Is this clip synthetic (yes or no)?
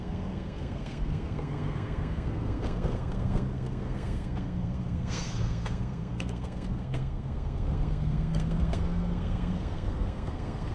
yes